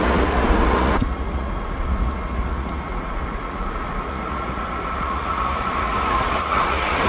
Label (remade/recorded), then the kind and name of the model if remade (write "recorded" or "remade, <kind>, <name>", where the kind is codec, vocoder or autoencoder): remade, vocoder, Vocos